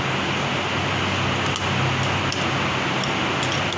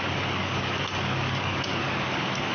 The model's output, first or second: second